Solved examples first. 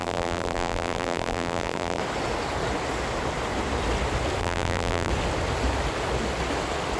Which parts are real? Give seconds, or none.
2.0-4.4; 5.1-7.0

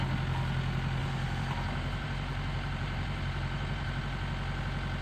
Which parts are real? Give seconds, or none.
0.0-1.0; 4.0-5.0

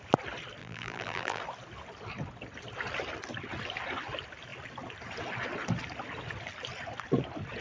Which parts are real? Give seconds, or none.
0.0-0.6; 1.4-7.6

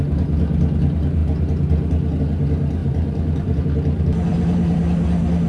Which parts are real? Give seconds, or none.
0.0-2.8; 3.6-4.3; 4.8-5.5